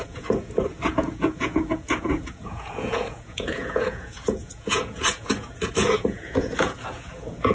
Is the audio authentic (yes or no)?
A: no